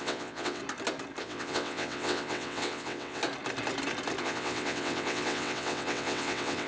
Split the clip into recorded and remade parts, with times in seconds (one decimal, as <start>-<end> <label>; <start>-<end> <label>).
0.0-0.6 remade; 0.6-1.2 recorded; 1.2-3.2 remade; 3.2-4.2 recorded; 4.2-6.7 remade